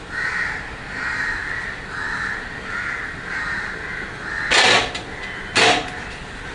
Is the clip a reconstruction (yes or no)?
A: no